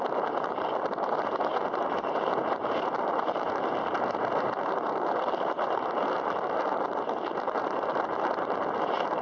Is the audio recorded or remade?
remade